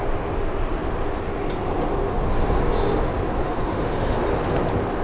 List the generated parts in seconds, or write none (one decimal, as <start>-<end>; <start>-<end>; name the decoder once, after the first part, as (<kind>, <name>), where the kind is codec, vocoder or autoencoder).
3.4-4.2 (autoencoder, DAC-VAE)